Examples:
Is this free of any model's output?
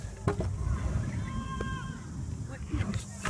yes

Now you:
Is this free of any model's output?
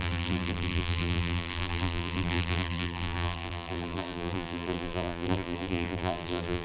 no